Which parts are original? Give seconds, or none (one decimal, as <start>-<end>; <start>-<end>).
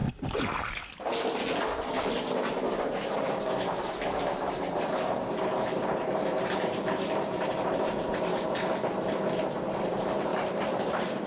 0.0-1.9; 8.3-9.4; 10.3-10.9